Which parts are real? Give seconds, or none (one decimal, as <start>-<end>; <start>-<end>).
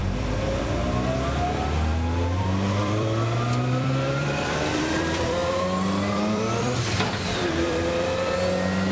1.9-2.4